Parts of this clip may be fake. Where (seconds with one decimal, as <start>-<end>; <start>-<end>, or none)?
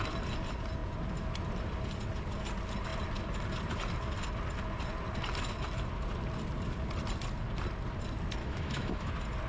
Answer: 8.4-9.1